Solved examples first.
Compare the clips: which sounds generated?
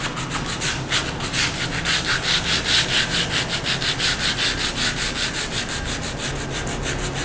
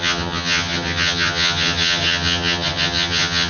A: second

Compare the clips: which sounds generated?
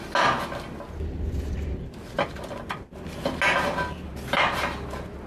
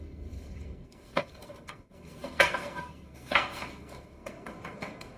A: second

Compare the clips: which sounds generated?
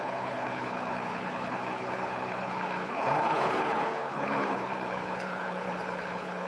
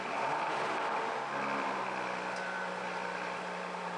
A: first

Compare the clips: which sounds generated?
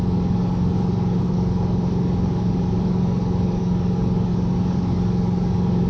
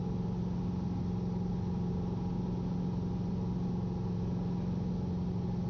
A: first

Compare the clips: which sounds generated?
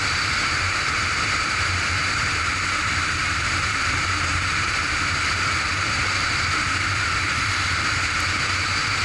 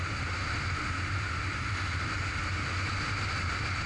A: first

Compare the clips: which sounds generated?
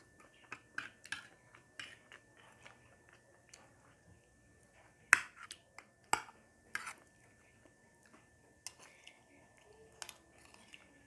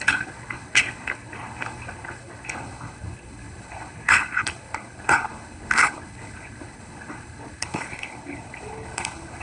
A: second